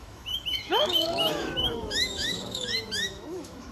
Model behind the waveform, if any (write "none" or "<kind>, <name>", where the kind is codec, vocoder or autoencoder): autoencoder, DAC-VAE